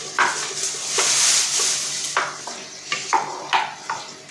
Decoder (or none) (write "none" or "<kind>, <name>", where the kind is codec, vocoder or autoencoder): none